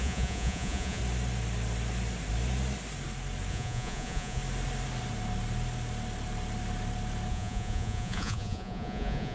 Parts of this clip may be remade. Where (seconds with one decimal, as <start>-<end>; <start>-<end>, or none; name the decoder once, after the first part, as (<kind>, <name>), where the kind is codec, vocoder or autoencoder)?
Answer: 0.0-1.0 (vocoder, Vocos); 3.5-4.4; 7.3-9.3